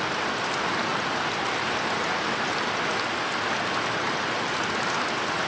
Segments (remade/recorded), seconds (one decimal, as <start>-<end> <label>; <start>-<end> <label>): 0.0-5.5 recorded

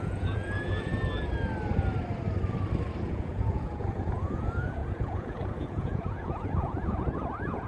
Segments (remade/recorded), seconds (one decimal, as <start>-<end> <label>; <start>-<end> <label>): 0.0-0.9 remade; 0.9-3.0 recorded; 3.0-7.7 remade

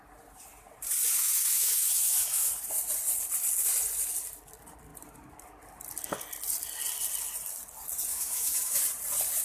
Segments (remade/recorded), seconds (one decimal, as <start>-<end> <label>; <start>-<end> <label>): 0.0-1.2 recorded; 1.2-2.5 remade; 2.5-8.1 recorded; 8.1-8.8 remade; 8.8-9.4 recorded

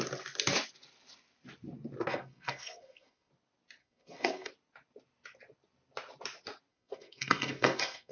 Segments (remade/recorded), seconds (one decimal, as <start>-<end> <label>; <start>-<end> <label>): 0.0-2.1 recorded; 2.1-3.3 remade; 3.3-3.8 recorded; 3.8-4.5 remade; 4.5-6.7 recorded; 6.7-8.1 remade